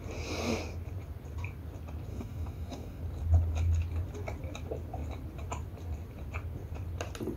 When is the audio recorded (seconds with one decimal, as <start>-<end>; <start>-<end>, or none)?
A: 0.0-2.1; 3.0-7.4